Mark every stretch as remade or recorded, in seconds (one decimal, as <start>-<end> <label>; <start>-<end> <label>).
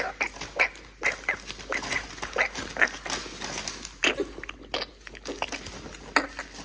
0.0-6.6 recorded